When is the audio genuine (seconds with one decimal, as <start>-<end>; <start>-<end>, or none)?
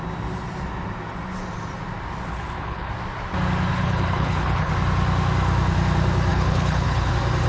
0.0-2.3; 2.9-3.7; 4.7-6.3; 7.1-7.5